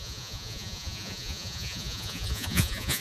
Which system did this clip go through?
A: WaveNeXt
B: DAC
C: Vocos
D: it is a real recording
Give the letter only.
C